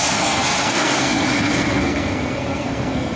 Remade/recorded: remade